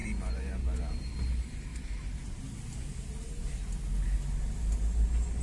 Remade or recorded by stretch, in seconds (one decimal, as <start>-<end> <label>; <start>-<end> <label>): 0.0-0.9 remade; 0.9-5.4 recorded